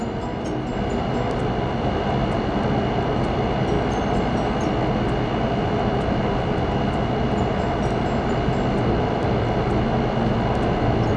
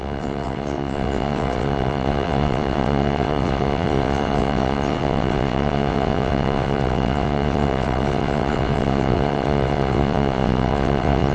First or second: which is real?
first